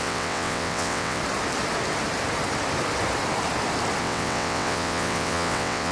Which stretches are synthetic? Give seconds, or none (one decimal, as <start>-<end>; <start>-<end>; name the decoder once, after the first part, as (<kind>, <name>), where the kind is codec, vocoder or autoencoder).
0.0-1.2 (vocoder, WaveNeXt); 4.0-5.9